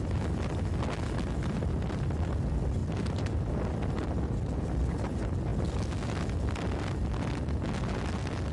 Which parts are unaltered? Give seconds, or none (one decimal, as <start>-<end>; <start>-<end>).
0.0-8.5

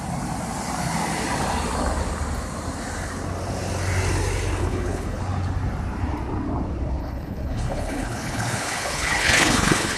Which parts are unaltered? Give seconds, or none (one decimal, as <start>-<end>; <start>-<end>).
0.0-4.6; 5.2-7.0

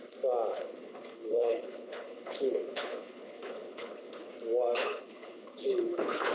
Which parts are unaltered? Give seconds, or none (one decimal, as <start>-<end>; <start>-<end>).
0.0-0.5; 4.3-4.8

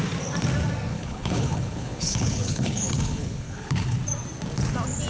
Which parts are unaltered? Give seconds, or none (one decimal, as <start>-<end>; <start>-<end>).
0.0-0.9; 4.0-5.1

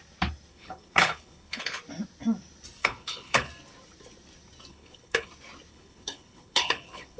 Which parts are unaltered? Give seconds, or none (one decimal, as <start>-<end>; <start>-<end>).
0.0-0.5; 1.8-2.8; 3.5-4.7; 5.3-5.7

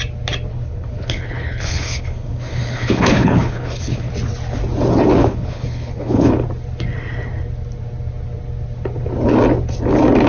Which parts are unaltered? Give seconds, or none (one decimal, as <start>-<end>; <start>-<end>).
0.0-0.5; 4.1-5.2; 6.3-10.3

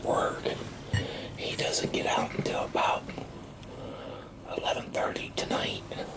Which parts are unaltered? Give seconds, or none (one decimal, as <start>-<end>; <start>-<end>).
0.0-3.2; 5.4-6.2

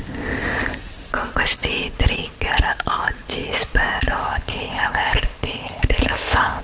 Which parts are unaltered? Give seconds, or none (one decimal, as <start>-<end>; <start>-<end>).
0.0-4.2